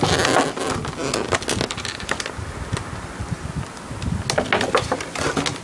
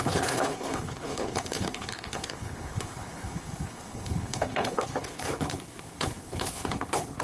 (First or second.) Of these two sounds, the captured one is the first